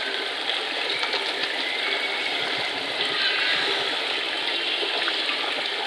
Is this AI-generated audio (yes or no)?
no